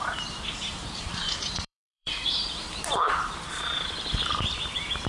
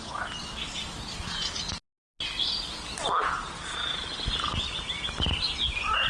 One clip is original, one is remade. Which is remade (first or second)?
first